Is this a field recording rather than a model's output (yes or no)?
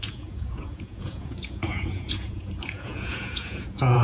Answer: no